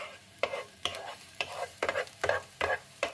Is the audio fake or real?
fake